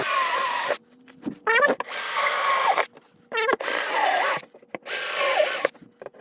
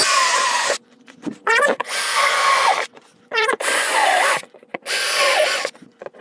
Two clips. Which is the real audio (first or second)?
first